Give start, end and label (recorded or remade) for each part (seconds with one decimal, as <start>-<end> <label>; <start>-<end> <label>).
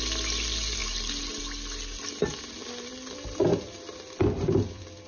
0.0-5.1 recorded